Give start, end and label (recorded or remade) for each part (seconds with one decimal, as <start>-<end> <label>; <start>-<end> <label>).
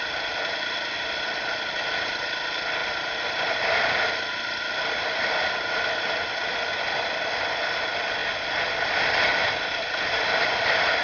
0.0-11.0 recorded